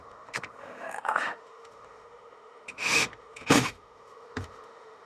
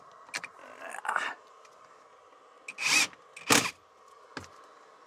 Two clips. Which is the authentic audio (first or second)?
second